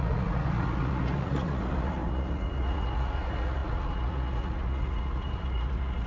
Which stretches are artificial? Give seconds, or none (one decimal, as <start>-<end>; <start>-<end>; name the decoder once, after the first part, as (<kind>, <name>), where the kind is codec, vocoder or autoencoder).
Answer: 0.0-6.1 (vocoder, Vocos)